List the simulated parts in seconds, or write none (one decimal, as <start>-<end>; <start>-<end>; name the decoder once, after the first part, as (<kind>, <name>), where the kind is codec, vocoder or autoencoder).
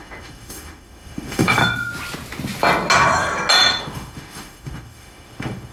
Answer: 0.0-1.6 (autoencoder, DAC-VAE); 3.8-5.7